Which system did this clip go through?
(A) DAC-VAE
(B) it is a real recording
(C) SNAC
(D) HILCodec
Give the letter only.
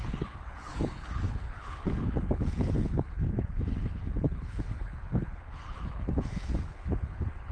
D